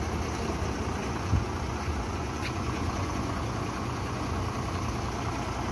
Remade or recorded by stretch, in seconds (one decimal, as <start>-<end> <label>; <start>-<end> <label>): 0.0-1.0 recorded; 1.0-4.4 remade; 4.4-5.7 recorded